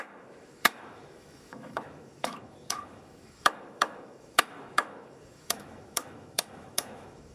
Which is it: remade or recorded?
remade